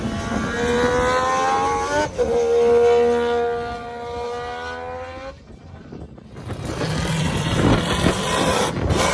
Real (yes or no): yes